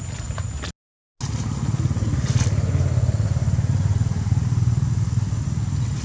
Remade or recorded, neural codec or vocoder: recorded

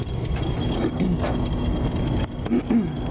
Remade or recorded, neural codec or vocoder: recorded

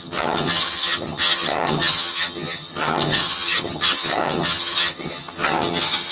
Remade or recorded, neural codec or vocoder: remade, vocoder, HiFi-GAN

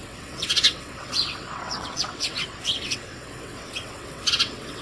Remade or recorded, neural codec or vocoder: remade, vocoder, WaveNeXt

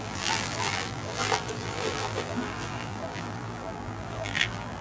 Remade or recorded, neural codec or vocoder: remade, vocoder, BigVGAN v2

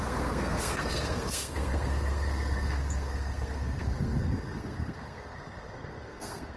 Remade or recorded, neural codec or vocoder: remade, codec, SNAC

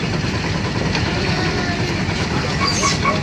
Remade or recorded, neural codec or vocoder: recorded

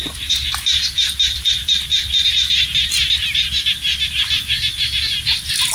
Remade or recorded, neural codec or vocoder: recorded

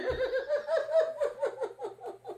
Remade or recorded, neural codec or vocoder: remade, vocoder, BigVGAN v2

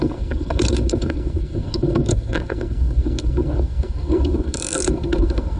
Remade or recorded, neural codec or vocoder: remade, codec, SNAC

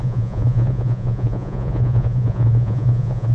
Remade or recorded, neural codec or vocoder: remade, vocoder, Vocos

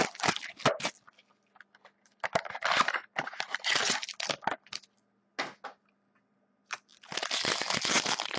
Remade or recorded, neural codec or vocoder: recorded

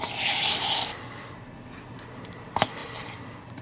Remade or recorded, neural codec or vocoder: recorded